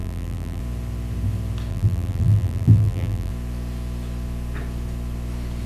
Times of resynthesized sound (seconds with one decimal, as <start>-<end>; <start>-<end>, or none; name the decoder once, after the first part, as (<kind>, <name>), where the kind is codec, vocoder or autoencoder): 0.0-0.6 (vocoder, BigVGAN v2); 1.7-3.3